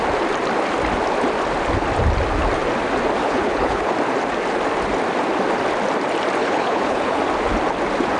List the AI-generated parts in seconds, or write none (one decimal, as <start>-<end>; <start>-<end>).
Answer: 3.2-3.9; 6.4-7.2